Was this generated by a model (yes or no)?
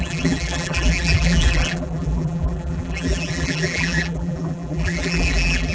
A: yes